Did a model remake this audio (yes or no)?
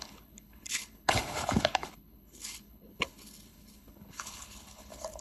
yes